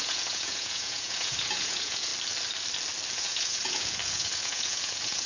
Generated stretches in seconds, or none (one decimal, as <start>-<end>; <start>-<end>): 0.0-2.1; 3.1-5.3